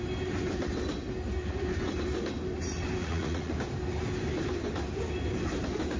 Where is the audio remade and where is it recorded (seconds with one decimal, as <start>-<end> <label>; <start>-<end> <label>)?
0.0-3.0 recorded; 3.0-3.5 remade; 3.5-6.0 recorded